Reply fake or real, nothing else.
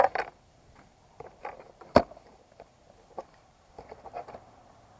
fake